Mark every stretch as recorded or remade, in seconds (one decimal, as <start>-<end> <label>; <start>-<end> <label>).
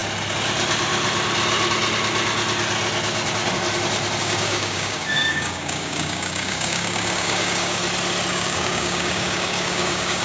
0.0-4.2 recorded; 4.2-7.8 remade; 7.8-8.3 recorded; 8.3-10.2 remade